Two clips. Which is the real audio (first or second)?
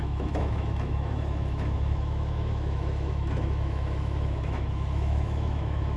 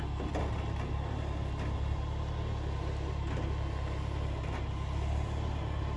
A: second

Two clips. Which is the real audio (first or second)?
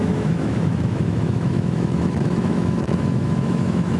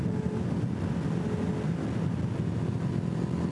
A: second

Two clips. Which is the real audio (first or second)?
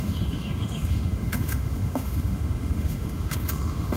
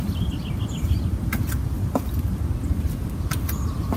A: second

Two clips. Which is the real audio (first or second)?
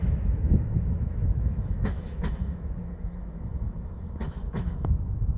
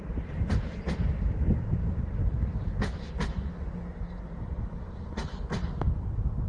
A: second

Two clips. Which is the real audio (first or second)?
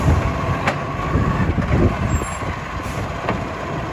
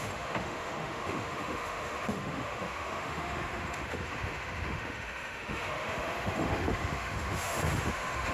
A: first